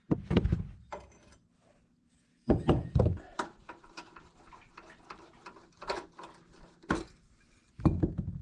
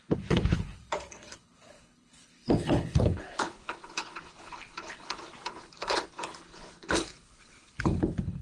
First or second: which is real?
first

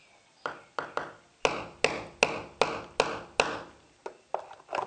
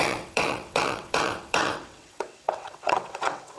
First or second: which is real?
first